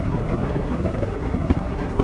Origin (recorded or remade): remade